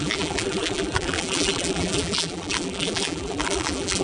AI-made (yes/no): yes